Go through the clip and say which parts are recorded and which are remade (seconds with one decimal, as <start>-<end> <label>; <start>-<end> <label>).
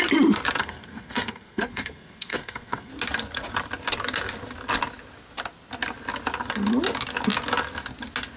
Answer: 0.0-0.6 recorded; 0.6-2.9 remade; 2.9-8.4 recorded